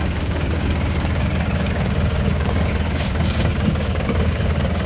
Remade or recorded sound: remade